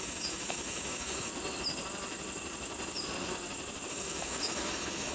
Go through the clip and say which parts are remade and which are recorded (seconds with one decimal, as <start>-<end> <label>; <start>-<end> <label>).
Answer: 0.0-1.3 remade; 1.3-3.9 recorded; 3.9-5.1 remade